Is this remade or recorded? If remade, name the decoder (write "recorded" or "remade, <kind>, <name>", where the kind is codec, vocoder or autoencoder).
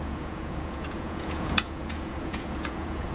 remade, vocoder, Vocos